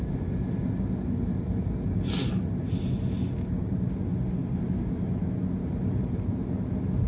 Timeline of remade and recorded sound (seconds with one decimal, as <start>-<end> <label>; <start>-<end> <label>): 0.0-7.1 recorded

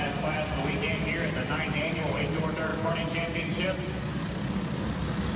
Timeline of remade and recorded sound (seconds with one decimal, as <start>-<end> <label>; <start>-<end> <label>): 0.0-5.4 recorded

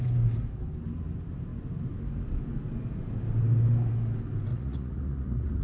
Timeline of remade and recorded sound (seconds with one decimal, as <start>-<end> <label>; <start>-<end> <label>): 0.0-4.5 recorded; 4.5-5.6 remade

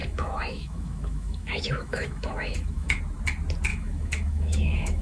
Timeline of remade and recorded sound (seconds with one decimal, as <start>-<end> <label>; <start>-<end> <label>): 0.0-3.0 remade; 3.0-3.7 recorded; 3.7-5.0 remade

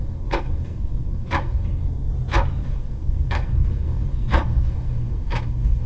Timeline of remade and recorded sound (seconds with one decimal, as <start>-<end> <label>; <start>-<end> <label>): 0.0-2.1 remade; 2.1-2.6 recorded; 2.6-5.9 remade

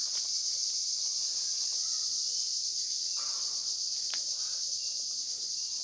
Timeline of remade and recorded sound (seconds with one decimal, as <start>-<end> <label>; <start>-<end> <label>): 0.0-0.6 recorded; 0.6-1.2 remade; 1.2-1.8 recorded; 1.8-5.3 remade; 5.3-5.8 recorded

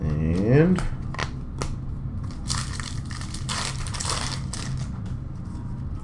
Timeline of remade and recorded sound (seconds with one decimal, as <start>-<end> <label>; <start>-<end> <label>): 0.0-6.0 recorded

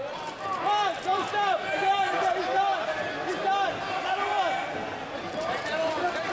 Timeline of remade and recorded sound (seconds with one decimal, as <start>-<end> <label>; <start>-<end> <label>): 0.0-6.3 recorded